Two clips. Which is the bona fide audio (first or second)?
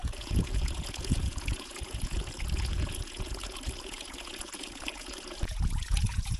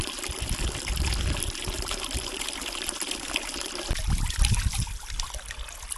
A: second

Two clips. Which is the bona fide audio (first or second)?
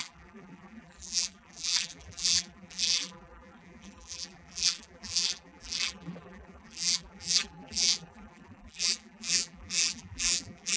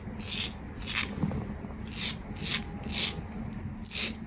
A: second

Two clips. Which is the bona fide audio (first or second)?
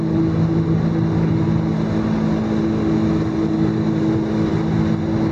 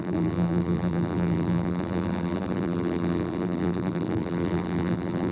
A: first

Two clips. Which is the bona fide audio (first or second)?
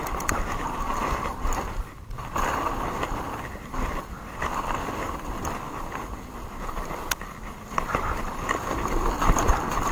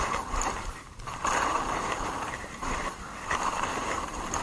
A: first